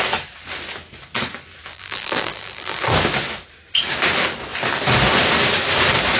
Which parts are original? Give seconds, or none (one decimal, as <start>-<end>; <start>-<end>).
0.0-1.7; 2.8-6.2